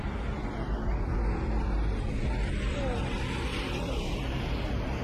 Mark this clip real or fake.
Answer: real